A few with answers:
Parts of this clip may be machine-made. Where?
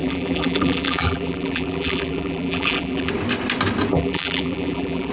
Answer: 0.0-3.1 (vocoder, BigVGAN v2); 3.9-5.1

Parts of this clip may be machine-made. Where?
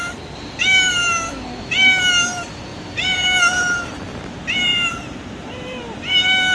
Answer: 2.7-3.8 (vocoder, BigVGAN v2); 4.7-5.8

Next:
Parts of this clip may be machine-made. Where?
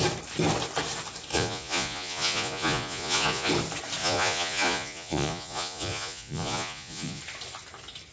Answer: 1.3-3.5 (vocoder, Vocos); 4.0-7.2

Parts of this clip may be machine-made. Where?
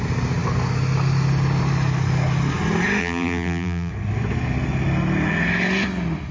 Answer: 3.0-3.9 (vocoder, BigVGAN v2)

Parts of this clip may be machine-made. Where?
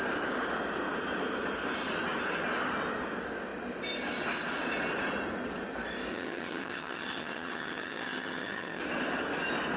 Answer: 6.1-8.8 (vocoder, HiFi-GAN)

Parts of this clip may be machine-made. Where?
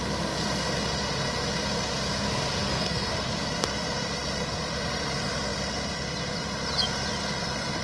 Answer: 2.6-3.1 (codec, SNAC)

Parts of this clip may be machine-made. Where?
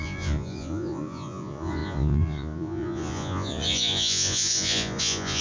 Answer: 0.0-5.4 (vocoder, Vocos)